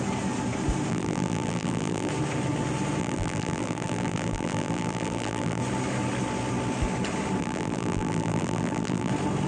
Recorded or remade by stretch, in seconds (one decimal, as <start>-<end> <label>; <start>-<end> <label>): 0.0-0.9 recorded; 0.9-2.1 remade; 2.1-3.0 recorded; 3.0-5.6 remade; 5.6-7.4 recorded; 7.4-9.1 remade; 9.1-9.5 recorded